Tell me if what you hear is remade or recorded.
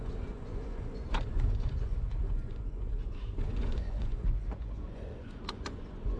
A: remade